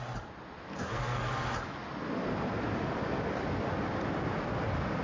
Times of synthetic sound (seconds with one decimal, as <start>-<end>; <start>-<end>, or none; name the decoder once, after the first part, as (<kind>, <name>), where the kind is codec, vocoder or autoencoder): 0.8-1.3 (codec, SNAC)

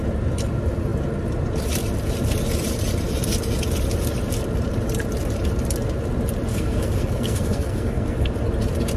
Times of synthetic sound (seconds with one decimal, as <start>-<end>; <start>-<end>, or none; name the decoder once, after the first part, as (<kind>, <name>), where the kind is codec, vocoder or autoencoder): 6.5-8.3 (codec, SNAC)